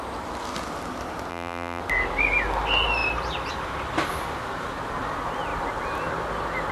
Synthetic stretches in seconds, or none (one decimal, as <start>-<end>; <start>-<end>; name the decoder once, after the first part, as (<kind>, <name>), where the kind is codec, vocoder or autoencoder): 1.3-1.8 (vocoder, BigVGAN v2)